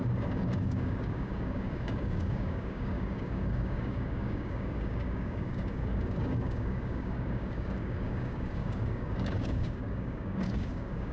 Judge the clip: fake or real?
fake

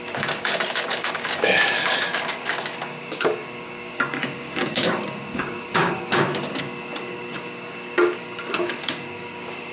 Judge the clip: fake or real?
fake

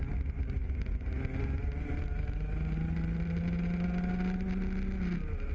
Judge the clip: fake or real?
real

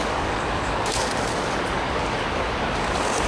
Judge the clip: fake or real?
fake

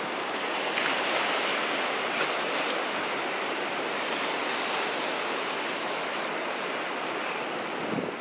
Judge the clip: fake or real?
real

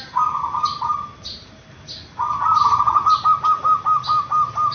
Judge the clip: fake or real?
real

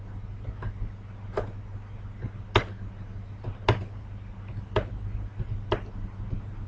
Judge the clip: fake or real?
real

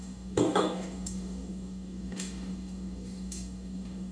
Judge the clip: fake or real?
fake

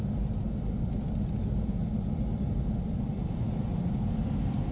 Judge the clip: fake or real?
real